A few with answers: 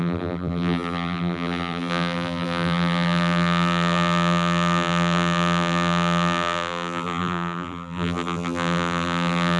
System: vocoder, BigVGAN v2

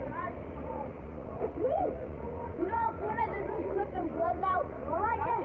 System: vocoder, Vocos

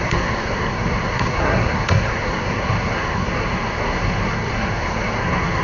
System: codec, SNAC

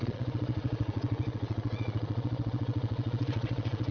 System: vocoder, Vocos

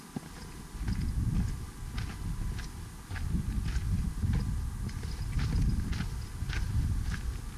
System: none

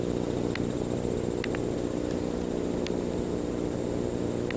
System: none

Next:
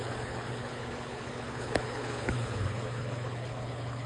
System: codec, HILCodec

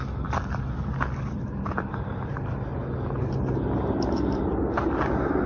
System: none